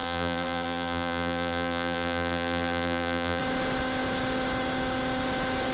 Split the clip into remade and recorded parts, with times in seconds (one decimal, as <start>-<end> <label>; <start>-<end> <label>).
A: 0.0-3.4 remade; 3.4-5.7 recorded